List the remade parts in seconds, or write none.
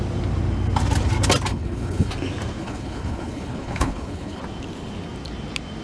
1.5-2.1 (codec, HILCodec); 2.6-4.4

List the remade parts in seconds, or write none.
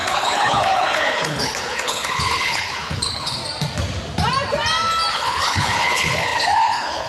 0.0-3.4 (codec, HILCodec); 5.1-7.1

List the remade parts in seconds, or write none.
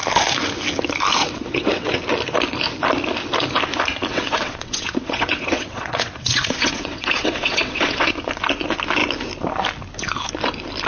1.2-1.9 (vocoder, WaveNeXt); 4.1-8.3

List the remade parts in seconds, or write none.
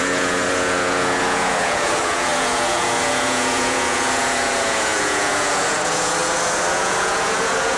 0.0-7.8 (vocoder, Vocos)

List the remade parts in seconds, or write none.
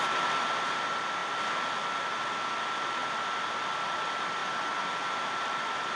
none